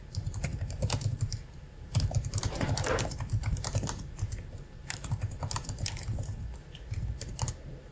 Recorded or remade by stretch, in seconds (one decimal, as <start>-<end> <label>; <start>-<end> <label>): 0.0-6.1 remade; 6.1-7.3 recorded; 7.3-7.9 remade